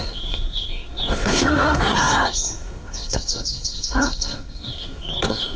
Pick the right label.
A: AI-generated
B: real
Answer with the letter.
A